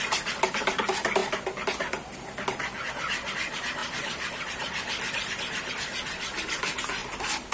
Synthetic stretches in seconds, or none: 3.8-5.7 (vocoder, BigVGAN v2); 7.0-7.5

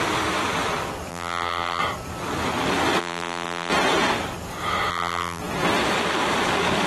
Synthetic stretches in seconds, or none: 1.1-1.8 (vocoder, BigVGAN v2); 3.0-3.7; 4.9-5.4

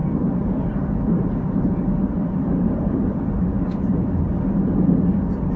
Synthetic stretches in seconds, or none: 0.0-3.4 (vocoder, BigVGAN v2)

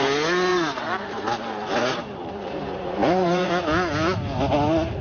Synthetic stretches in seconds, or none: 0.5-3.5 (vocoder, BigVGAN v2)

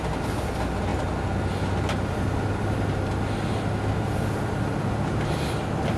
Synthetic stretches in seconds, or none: none